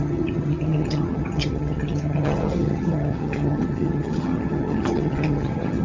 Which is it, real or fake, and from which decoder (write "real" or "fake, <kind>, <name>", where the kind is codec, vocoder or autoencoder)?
fake, vocoder, HiFi-GAN